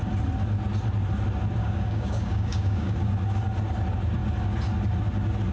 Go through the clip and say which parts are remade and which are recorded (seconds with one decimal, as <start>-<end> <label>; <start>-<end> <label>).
0.0-1.6 recorded; 1.6-3.1 remade; 3.1-5.5 recorded